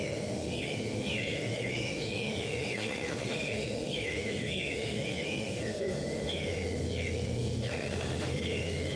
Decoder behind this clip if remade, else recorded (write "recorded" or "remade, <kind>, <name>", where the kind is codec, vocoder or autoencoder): remade, autoencoder, DAC-VAE